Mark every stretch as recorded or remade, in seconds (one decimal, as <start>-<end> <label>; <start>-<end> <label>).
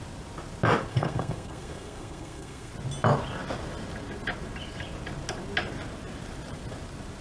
0.0-0.9 recorded; 0.9-2.7 remade; 2.7-7.2 recorded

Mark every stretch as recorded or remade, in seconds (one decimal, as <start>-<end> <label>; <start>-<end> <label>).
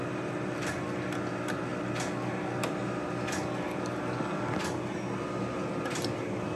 0.0-6.6 recorded